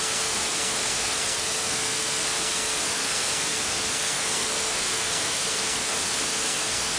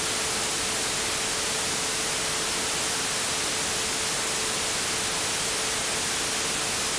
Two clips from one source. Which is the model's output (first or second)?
first